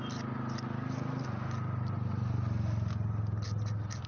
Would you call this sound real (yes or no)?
yes